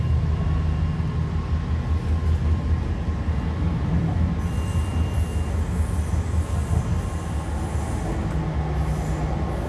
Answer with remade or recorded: recorded